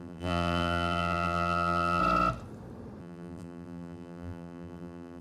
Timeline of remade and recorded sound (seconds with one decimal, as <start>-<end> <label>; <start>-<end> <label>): 0.0-2.0 remade; 2.0-3.0 recorded; 3.0-5.2 remade